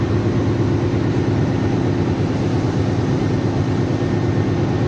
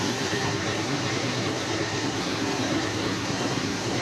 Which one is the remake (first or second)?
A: second